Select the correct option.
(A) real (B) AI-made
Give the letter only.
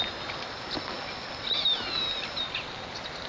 A